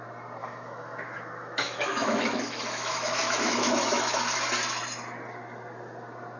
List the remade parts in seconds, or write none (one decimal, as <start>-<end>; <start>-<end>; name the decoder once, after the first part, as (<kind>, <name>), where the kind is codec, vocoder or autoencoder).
0.4-4.2 (autoencoder, DAC-VAE)